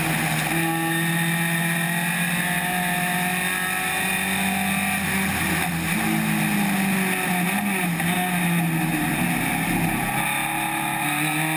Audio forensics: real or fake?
real